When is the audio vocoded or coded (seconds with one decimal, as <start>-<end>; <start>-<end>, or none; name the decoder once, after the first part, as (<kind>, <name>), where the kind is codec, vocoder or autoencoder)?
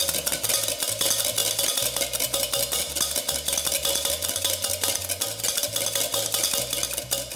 none